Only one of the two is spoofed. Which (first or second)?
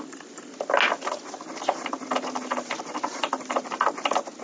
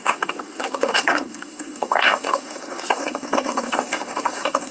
second